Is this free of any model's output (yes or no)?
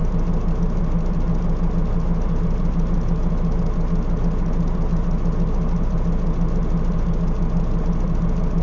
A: yes